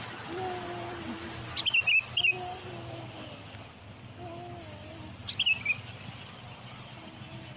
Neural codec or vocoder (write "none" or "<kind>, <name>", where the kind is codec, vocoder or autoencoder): none